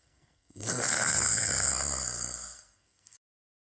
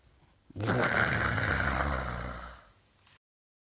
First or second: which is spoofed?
first